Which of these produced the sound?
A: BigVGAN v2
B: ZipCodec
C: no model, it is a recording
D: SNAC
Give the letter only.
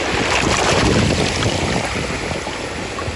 C